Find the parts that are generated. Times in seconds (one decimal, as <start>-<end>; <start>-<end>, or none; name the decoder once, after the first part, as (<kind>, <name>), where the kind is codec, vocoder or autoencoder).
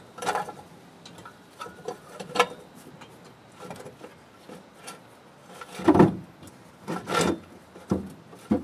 1.2-2.2 (vocoder, BigVGAN v2)